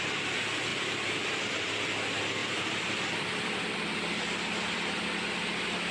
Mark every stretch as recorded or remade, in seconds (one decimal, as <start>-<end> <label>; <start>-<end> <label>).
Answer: 0.0-0.7 recorded; 0.7-1.8 remade; 1.8-2.4 recorded; 2.4-5.0 remade; 5.0-5.9 recorded